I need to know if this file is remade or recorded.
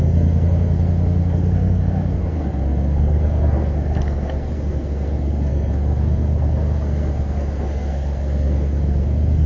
remade